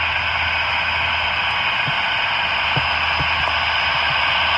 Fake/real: real